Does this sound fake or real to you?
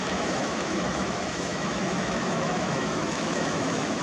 fake